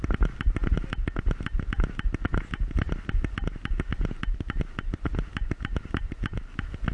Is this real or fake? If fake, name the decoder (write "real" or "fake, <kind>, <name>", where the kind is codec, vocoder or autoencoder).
real